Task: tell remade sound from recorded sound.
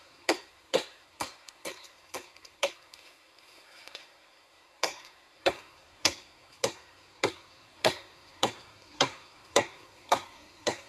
remade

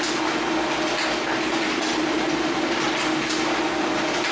recorded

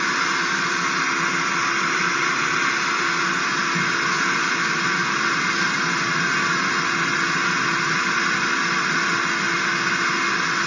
recorded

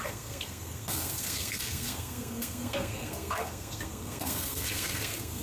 remade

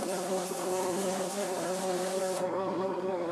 remade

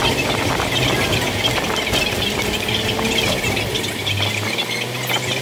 recorded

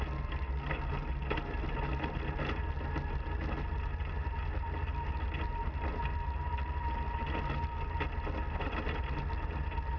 recorded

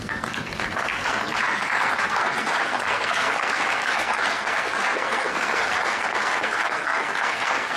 remade